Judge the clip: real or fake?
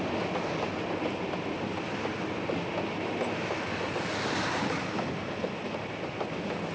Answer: real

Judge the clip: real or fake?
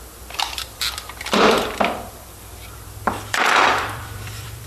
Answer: fake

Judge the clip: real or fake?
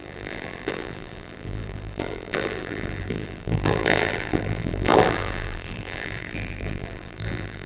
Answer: fake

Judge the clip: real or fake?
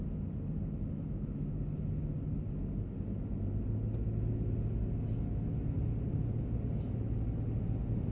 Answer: real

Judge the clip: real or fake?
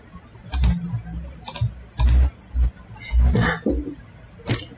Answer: real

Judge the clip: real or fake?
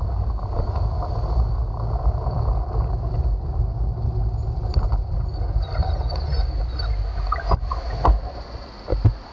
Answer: real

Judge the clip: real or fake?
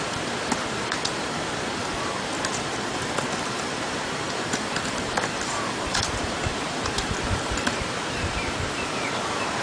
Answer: fake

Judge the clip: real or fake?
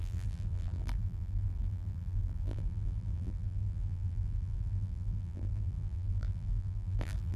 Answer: fake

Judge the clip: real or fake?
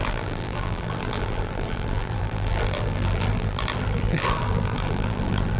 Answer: fake